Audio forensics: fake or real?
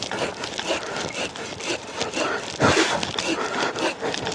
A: real